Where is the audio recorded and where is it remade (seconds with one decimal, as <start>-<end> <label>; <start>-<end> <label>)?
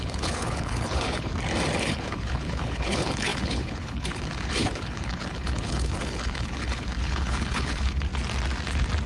0.0-1.3 remade; 1.3-1.8 recorded; 1.8-8.1 remade; 8.1-9.1 recorded